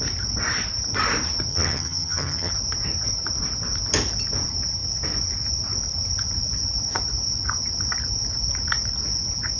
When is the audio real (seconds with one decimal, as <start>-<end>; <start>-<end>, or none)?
0.0-1.5; 2.5-9.6